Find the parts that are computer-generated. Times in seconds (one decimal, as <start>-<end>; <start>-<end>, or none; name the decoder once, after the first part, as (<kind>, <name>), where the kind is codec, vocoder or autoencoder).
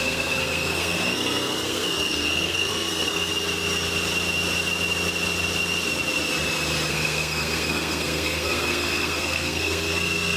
0.0-3.3 (codec, SNAC); 6.9-10.4